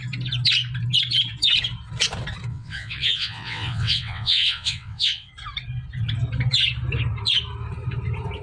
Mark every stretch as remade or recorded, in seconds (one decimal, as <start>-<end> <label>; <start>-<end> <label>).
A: 0.0-2.5 recorded; 2.5-5.3 remade; 5.3-8.4 recorded